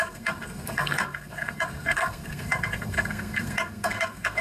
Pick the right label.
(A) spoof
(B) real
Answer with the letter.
A